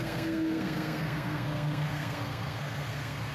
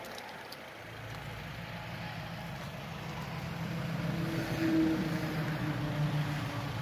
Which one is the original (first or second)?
second